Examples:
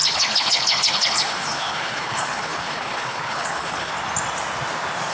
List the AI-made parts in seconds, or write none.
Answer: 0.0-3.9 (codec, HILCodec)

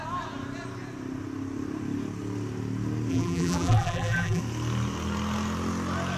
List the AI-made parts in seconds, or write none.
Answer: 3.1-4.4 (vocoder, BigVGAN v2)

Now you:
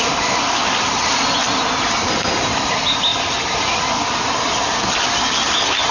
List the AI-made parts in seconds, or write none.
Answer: none

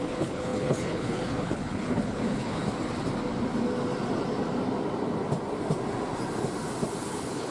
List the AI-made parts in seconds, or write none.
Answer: 0.0-2.6 (codec, HILCodec); 7.0-7.5

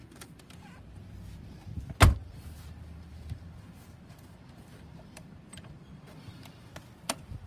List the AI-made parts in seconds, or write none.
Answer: 0.0-0.8 (vocoder, BigVGAN v2); 2.2-6.7

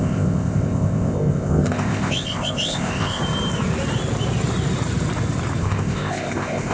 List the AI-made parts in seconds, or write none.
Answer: 0.0-3.2 (codec, ZipCodec); 5.6-6.7